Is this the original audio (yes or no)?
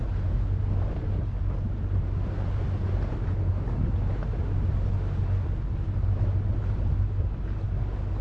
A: yes